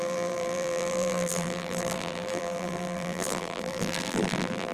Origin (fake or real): fake